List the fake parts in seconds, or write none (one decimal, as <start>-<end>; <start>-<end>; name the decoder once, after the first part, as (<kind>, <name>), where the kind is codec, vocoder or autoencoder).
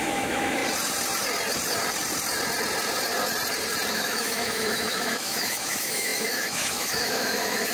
0.0-0.6 (autoencoder, DAC-VAE); 3.9-7.7